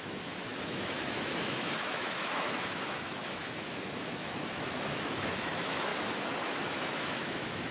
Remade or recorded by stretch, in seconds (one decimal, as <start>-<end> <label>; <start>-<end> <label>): 0.0-5.9 remade; 5.9-6.4 recorded; 6.4-7.7 remade